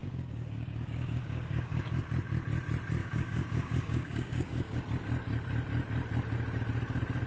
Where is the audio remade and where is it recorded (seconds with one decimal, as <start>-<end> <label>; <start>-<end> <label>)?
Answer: 0.0-1.9 remade; 1.9-3.0 recorded; 3.0-4.8 remade; 4.8-7.3 recorded